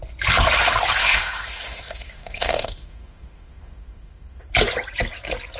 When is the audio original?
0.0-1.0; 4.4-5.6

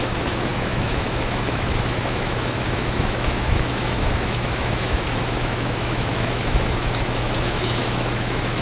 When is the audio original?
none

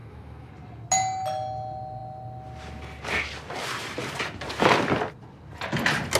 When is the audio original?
0.5-6.2

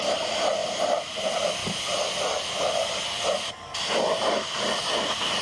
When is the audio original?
0.0-5.4

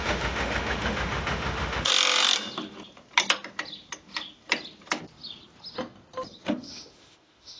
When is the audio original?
1.9-6.5

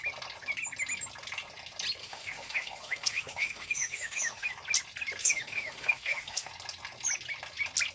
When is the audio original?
0.0-2.0; 4.5-5.2; 6.5-7.9

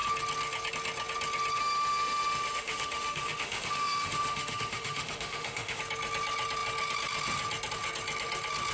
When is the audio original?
0.0-1.6; 5.8-8.7

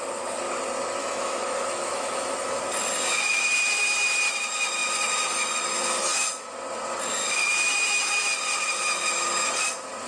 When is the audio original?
0.0-1.0; 2.6-4.8; 6.5-7.4; 8.3-10.1